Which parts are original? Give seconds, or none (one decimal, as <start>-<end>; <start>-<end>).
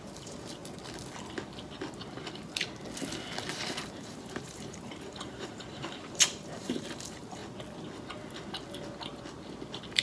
0.6-3.8; 7.4-10.0